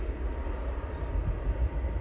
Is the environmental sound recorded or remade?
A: recorded